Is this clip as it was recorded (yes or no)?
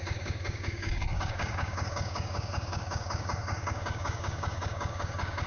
no